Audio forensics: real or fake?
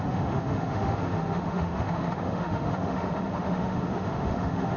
fake